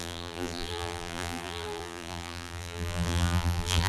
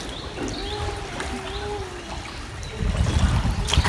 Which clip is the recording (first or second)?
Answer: second